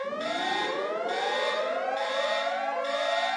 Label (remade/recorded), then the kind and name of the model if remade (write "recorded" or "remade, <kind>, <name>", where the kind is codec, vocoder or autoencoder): remade, vocoder, BigVGAN v2